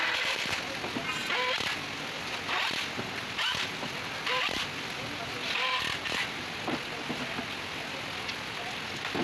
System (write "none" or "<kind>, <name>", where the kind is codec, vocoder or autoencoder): none